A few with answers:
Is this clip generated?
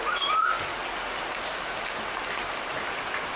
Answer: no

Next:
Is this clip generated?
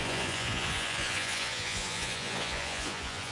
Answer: yes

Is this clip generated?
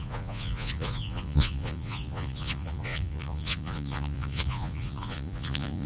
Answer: yes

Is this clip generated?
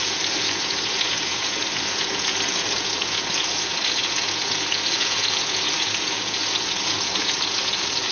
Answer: yes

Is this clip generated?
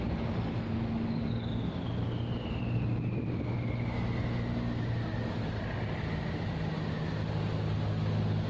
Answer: no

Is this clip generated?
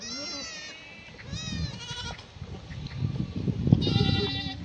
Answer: no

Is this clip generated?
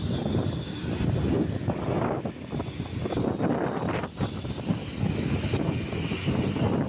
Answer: no